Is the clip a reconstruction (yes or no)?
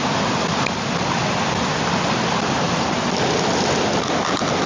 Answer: no